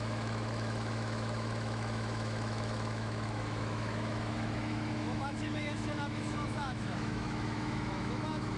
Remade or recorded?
remade